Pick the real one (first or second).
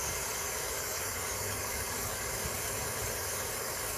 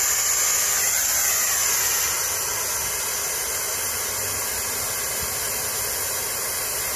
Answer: second